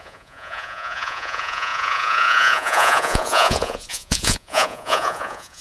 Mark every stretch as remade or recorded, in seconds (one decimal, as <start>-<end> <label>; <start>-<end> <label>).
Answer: 0.0-5.6 remade